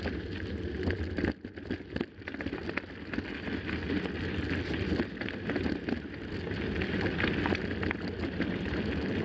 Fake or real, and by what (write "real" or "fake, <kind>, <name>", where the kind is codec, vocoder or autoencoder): real